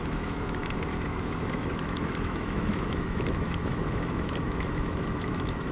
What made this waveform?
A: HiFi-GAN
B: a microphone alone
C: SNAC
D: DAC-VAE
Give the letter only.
D